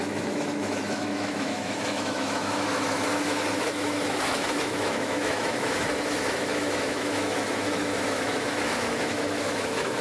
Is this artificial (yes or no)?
yes